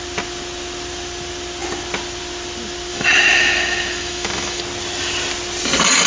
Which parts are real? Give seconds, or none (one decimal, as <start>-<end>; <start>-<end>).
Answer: 0.0-2.9; 4.6-6.1